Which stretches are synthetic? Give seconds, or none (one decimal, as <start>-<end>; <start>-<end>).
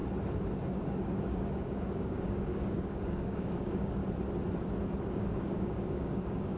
0.6-4.0; 5.1-6.6